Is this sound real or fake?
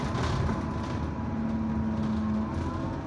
real